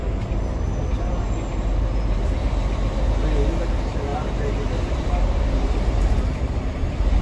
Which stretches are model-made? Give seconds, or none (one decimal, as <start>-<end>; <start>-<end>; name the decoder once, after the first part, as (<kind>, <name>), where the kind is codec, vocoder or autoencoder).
0.0-0.6 (vocoder, BigVGAN v2); 1.5-3.0; 4.1-6.7